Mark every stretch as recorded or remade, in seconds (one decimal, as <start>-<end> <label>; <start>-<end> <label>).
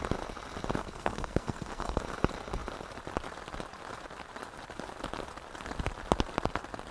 0.0-0.8 recorded; 0.8-2.0 remade; 2.0-6.9 recorded